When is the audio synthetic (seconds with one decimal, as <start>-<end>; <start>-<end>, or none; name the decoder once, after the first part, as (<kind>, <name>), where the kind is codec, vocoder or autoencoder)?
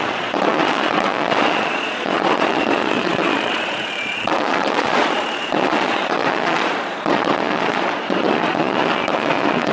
0.0-9.7 (vocoder, Vocos)